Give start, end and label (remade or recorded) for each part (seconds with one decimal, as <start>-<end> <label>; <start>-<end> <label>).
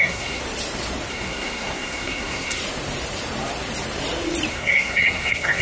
0.0-0.4 remade; 0.4-1.1 recorded; 1.1-2.6 remade; 2.6-4.5 recorded; 4.5-5.6 remade